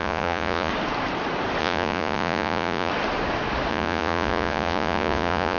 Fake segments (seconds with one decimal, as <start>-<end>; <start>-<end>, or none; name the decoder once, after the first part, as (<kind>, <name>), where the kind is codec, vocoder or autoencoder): 0.0-0.7 (vocoder, Vocos); 1.6-2.9; 3.7-5.6